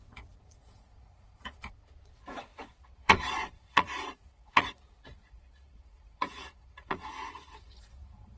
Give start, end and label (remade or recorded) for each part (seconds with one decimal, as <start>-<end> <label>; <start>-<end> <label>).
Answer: 0.0-8.4 remade